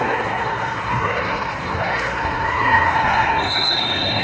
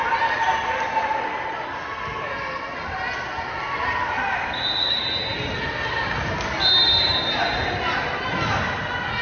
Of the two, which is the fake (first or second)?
first